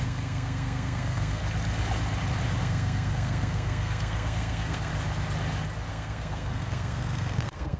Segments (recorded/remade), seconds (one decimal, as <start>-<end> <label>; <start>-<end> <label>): 0.0-1.4 remade; 1.4-2.6 recorded; 2.6-4.9 remade; 4.9-5.9 recorded; 5.9-7.8 remade